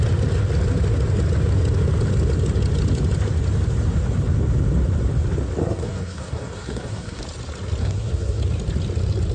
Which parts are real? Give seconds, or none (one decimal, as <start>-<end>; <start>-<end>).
0.0-5.6; 7.2-7.8; 8.4-9.3